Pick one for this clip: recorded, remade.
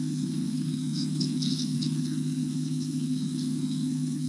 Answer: remade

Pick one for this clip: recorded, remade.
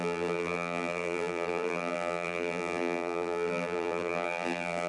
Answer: remade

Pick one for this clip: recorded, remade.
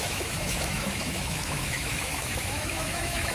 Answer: remade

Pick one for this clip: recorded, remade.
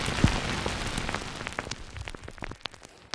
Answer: recorded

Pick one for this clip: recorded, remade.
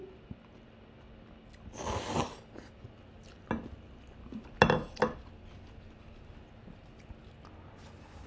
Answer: recorded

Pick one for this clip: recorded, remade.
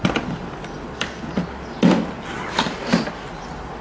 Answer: recorded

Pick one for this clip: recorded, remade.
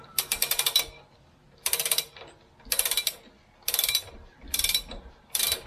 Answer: recorded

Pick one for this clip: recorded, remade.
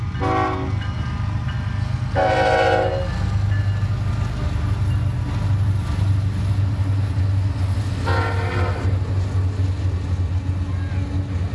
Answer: recorded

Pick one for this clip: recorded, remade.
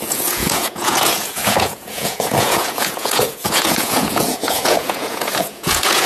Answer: remade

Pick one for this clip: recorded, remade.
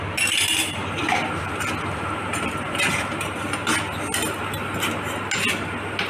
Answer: recorded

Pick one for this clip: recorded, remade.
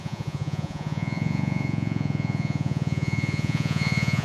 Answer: remade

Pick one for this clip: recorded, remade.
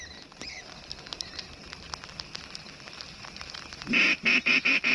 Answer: recorded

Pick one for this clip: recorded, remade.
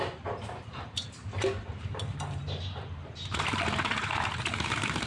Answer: remade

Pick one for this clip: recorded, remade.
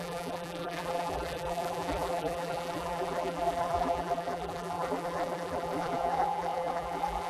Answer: remade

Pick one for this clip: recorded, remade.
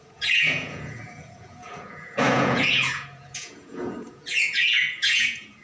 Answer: remade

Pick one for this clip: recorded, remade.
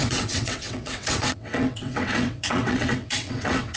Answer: remade